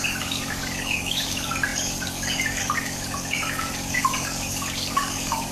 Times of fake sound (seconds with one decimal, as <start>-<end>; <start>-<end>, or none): 0.0-5.5